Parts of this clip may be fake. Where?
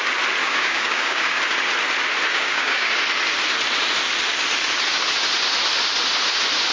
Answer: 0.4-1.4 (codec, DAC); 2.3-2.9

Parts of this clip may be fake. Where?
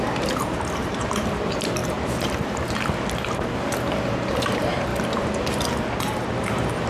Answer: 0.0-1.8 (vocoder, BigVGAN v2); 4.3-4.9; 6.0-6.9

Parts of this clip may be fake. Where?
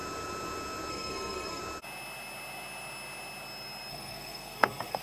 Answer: 0.9-1.6 (codec, SNAC); 3.9-5.0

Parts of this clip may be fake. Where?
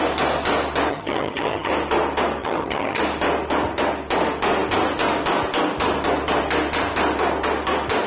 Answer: 0.9-1.7 (vocoder, HiFi-GAN); 2.4-3.0